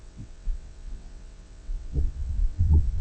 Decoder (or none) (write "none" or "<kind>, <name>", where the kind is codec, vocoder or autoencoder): vocoder, WaveNeXt